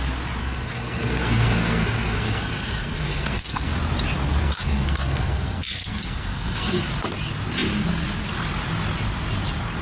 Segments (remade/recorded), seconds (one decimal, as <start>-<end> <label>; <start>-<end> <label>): 0.0-0.4 recorded; 0.4-3.7 remade; 3.7-4.4 recorded; 4.4-6.9 remade; 6.9-9.8 recorded